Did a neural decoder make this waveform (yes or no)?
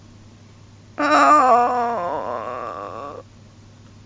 no